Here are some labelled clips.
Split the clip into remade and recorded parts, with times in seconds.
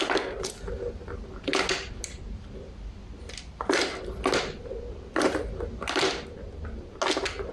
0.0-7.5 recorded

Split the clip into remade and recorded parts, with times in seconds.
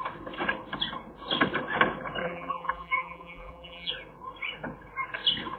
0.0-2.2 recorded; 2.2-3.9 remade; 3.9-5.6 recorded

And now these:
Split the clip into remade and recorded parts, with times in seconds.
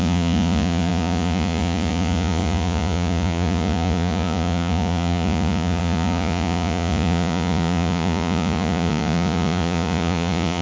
0.0-10.6 remade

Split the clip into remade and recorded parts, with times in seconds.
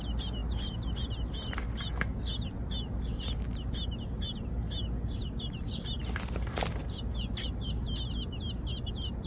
0.0-9.3 recorded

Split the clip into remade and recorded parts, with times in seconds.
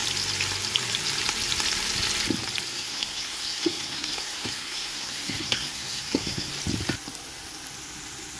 0.0-2.7 recorded; 2.7-6.5 remade; 6.5-8.4 recorded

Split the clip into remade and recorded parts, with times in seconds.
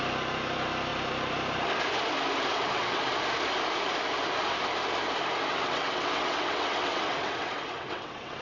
0.0-2.5 recorded; 2.5-3.0 remade; 3.0-5.5 recorded; 5.5-8.4 remade